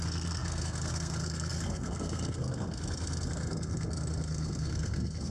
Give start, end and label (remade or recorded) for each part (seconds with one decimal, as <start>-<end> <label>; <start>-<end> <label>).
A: 0.0-5.3 remade